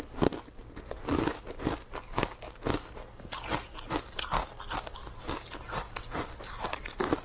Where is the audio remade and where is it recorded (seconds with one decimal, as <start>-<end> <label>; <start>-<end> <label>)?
0.0-7.2 recorded